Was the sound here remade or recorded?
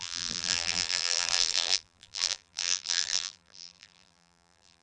remade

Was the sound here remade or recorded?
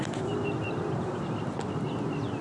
recorded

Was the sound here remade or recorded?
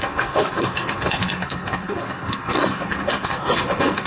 remade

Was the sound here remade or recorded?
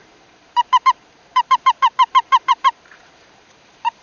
remade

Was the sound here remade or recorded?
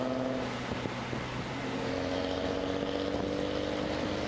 recorded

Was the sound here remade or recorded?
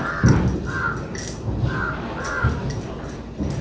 recorded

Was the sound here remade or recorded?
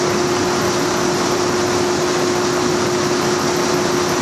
recorded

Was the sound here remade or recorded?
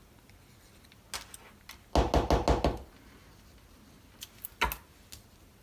recorded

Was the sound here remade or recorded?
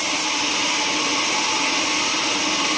recorded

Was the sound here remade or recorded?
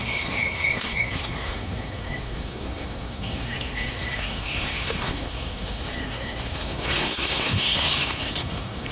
remade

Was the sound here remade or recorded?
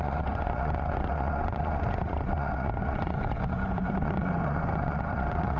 remade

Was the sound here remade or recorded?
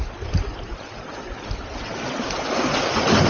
recorded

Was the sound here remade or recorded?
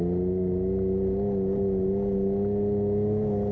recorded